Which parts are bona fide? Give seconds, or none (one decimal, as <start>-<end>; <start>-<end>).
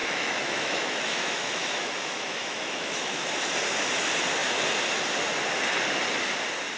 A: 3.3-6.8